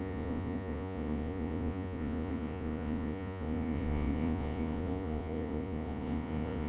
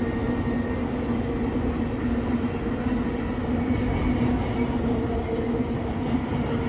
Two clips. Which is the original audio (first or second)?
second